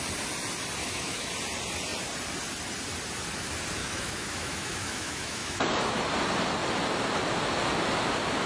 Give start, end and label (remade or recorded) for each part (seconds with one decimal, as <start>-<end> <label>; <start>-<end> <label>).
0.0-0.8 recorded; 0.8-1.3 remade; 1.3-3.8 recorded; 3.8-6.0 remade; 6.0-8.5 recorded